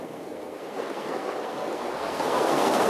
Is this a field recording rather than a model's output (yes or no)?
no